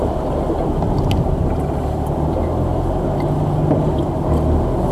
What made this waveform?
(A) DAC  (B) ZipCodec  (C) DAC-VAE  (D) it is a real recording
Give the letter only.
D